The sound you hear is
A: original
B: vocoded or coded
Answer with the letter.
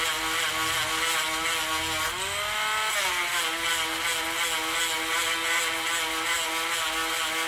A